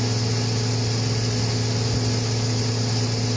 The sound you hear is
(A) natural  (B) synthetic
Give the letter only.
A